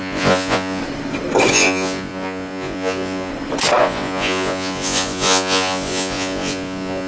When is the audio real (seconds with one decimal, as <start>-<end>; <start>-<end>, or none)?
0.8-1.5; 3.3-3.8